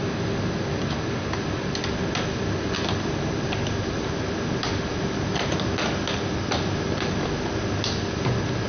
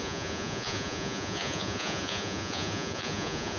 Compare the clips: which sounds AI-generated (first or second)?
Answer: second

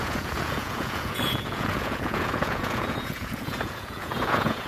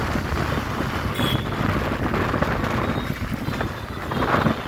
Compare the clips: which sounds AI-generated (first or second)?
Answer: first